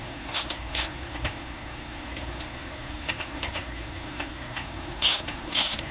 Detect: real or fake fake